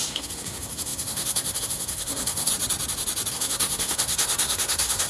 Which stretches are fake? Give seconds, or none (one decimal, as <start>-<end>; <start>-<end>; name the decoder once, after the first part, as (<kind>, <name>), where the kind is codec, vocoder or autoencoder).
0.0-2.5 (codec, SNAC); 3.3-5.1